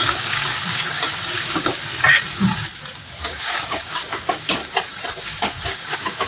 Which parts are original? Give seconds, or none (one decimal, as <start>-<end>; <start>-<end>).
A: 1.8-2.9; 4.6-5.2